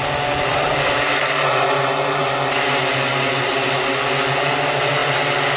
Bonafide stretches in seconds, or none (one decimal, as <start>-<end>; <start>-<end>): 0.0-0.5; 1.0-5.6